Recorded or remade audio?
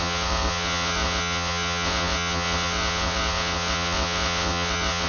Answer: remade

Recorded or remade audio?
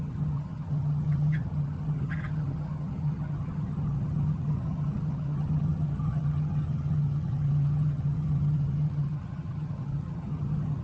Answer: remade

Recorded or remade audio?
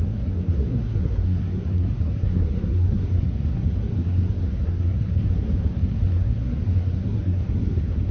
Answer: remade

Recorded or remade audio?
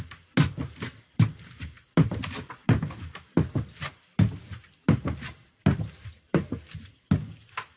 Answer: recorded